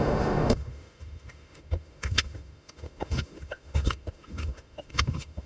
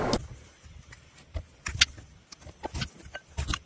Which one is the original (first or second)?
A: second